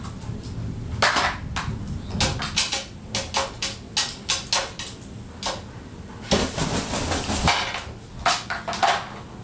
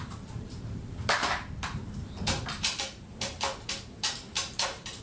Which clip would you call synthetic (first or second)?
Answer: second